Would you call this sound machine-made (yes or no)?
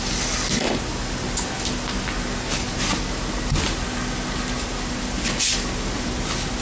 no